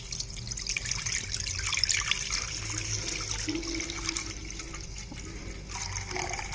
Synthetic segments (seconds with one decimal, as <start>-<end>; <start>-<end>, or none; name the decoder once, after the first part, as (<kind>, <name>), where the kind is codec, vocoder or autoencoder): none

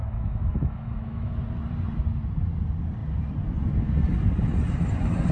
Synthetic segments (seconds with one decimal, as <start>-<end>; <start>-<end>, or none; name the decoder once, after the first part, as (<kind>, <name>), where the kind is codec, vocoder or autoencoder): 0.0-1.3 (autoencoder, DAC-VAE)

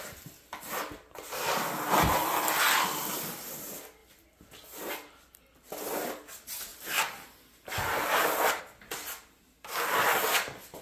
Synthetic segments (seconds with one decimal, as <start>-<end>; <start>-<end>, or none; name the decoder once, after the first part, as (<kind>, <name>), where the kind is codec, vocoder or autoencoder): 6.7-8.6 (vocoder, BigVGAN v2)

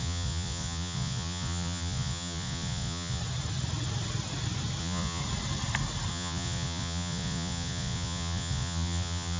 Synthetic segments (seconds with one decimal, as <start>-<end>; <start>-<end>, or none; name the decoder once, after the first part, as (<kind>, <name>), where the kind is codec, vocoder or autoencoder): 0.0-3.2 (vocoder, Vocos); 4.8-5.2; 6.1-9.4

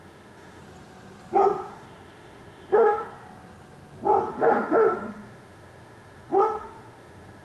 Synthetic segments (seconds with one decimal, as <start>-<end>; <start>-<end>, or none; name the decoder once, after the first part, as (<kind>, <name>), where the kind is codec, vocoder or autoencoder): 0.0-0.6 (autoencoder, DAC-VAE); 1.7-3.0; 4.3-7.4

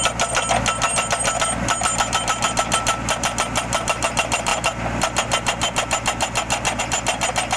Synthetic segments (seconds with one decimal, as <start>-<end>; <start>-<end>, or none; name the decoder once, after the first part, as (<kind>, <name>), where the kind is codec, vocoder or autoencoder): none

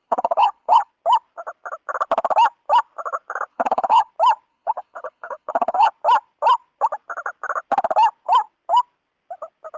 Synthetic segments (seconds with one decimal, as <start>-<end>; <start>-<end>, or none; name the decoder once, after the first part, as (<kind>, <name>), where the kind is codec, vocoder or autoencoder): 0.0-0.9 (codec, HILCodec); 3.5-4.1; 4.5-5.9